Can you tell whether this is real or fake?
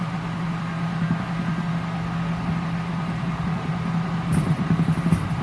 real